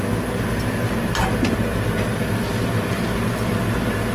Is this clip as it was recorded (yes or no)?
yes